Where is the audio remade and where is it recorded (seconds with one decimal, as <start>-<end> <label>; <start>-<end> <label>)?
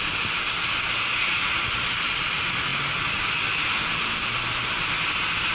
0.0-5.5 recorded